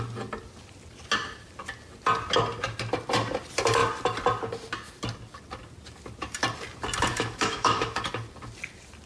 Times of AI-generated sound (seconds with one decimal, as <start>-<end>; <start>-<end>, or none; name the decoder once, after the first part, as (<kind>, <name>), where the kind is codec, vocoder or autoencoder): 7.1-8.0 (autoencoder, DAC-VAE)